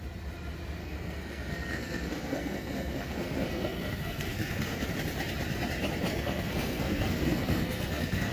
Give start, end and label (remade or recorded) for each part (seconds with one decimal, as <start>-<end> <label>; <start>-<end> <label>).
0.0-0.8 recorded; 0.8-4.9 remade; 4.9-6.1 recorded; 6.1-8.3 remade